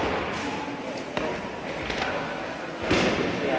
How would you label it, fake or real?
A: real